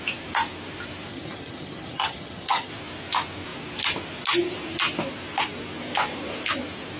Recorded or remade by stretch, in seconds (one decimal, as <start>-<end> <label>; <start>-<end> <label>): 0.0-1.1 recorded; 1.1-2.7 remade; 2.7-7.0 recorded